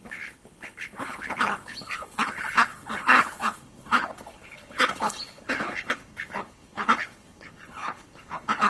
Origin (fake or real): fake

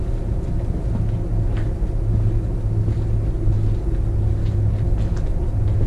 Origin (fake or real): real